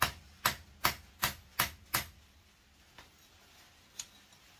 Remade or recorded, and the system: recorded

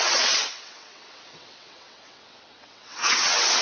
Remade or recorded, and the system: remade, vocoder, WaveNeXt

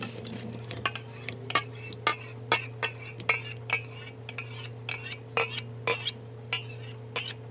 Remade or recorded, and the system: recorded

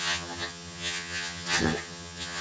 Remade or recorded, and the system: remade, vocoder, HiFi-GAN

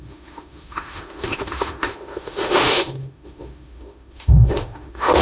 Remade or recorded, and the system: remade, autoencoder, DAC-VAE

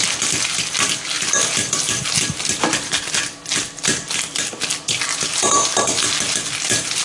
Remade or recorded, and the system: recorded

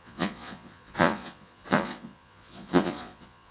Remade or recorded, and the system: remade, vocoder, Vocos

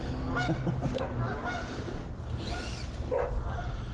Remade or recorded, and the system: recorded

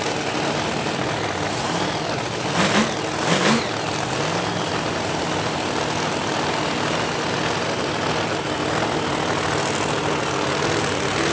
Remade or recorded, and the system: recorded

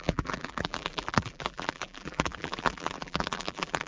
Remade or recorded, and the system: remade, vocoder, BigVGAN v2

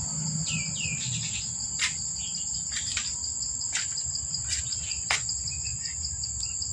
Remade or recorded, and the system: recorded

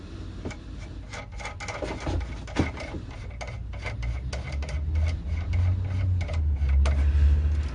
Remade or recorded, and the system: recorded